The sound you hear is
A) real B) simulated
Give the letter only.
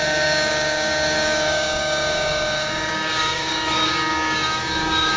B